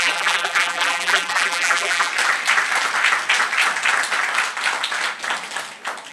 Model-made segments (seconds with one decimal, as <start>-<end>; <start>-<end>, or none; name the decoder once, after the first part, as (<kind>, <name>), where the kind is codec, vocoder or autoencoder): 0.0-2.1 (vocoder, BigVGAN v2)